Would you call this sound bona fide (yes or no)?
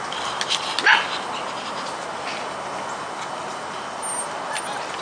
yes